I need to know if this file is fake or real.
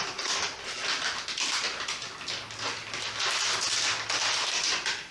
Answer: real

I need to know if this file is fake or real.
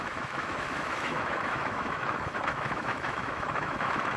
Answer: fake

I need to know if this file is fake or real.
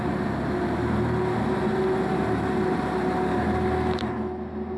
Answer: real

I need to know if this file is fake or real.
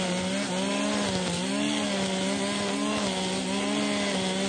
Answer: real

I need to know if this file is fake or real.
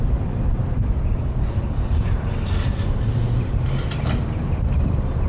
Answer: real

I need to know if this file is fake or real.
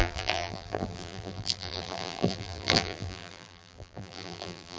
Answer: fake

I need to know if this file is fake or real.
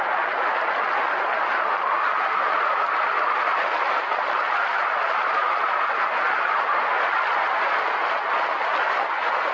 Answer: real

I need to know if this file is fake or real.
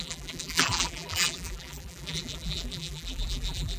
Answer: fake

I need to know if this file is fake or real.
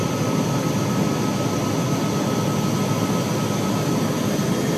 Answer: real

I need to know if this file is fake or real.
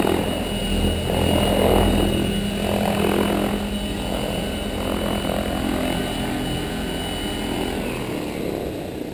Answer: real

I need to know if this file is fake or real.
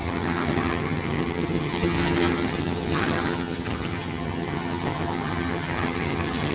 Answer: fake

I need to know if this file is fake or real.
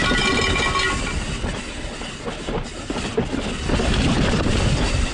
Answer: real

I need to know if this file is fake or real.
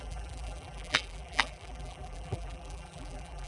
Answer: fake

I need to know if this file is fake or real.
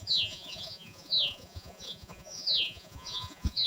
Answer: fake